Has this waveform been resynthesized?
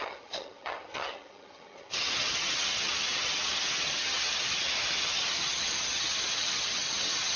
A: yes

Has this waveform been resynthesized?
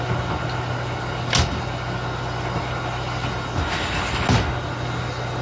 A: no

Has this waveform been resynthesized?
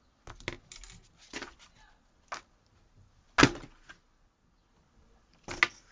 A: no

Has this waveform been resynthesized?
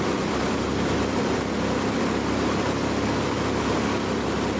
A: no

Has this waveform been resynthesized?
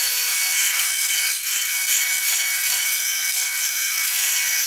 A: yes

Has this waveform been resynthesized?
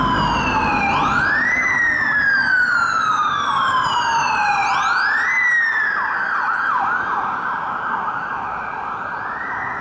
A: no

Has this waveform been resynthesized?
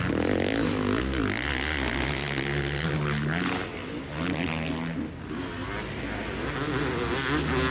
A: no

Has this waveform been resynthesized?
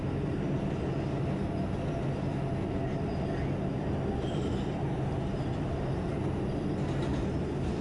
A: no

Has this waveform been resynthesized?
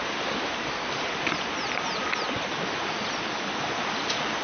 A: no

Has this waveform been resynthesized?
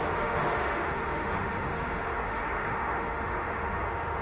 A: yes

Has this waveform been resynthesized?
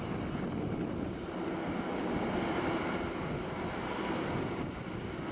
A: no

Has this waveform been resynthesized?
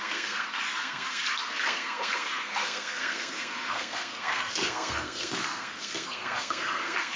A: yes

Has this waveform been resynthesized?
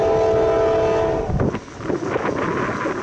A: no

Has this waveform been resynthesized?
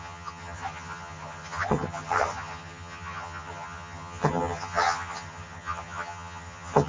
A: yes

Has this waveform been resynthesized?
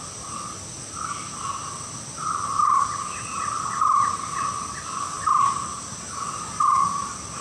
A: no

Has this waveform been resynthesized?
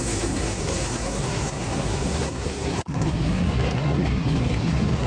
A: yes